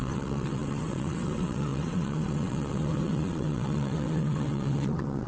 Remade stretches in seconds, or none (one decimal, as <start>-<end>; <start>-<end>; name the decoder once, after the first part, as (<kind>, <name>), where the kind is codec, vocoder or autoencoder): 0.0-5.3 (vocoder, WaveNeXt)